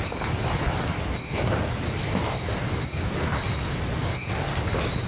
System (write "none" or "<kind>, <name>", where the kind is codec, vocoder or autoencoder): none